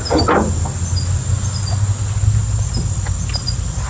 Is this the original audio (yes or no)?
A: yes